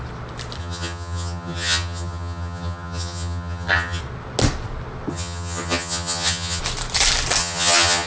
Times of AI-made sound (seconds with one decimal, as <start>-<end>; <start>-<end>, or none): 0.6-4.0; 5.1-6.6; 7.4-8.1